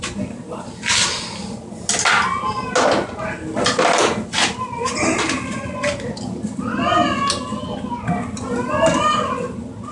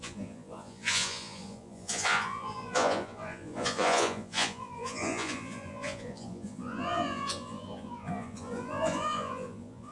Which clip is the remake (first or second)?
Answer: second